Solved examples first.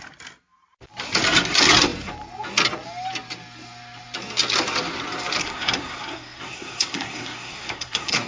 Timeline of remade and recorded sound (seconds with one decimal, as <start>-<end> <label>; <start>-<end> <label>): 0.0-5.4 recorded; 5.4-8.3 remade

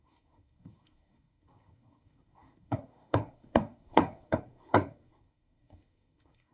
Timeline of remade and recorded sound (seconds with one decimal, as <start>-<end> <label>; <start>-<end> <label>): 0.0-6.5 remade

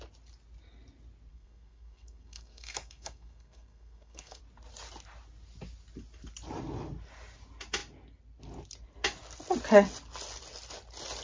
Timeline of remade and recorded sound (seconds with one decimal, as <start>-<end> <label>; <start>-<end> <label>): 0.0-1.3 recorded; 1.3-4.4 remade; 4.4-11.2 recorded

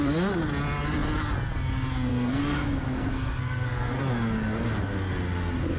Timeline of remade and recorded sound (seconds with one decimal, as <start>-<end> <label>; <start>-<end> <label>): 0.0-2.1 recorded; 2.1-4.0 remade; 4.0-5.8 recorded

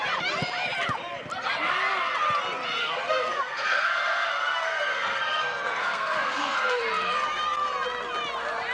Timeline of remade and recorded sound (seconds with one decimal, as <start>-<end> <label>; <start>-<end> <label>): 0.0-2.8 recorded; 2.8-6.8 remade; 6.8-8.7 recorded

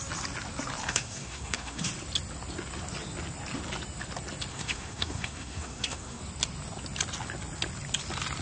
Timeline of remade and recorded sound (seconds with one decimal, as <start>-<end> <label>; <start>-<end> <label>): 0.0-0.9 recorded; 0.9-1.9 remade; 1.9-4.5 recorded; 4.5-6.2 remade; 6.2-8.4 recorded

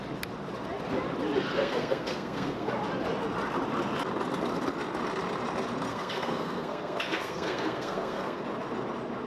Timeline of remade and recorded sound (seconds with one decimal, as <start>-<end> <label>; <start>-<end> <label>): 0.0-1.5 recorded; 1.5-2.7 remade; 2.7-5.9 recorded; 5.9-8.4 remade; 8.4-9.3 recorded